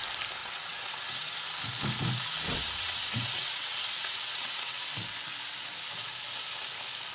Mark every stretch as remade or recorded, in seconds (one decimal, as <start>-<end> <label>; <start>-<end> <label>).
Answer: 0.0-0.4 recorded; 0.4-1.3 remade; 1.3-2.5 recorded; 2.5-4.8 remade; 4.8-7.1 recorded